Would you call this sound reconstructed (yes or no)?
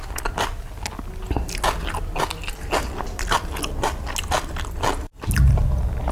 no